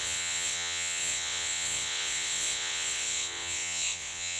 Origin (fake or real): fake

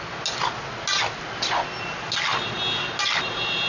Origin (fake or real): real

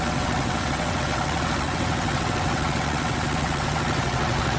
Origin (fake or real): fake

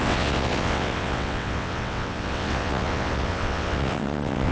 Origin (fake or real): fake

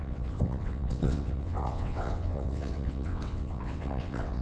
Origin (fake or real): fake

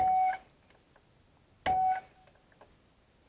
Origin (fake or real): real